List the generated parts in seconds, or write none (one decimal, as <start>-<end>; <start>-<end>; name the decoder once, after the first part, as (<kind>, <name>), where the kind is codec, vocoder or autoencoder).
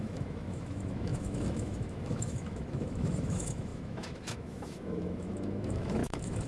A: 0.0-6.5 (autoencoder, DAC-VAE)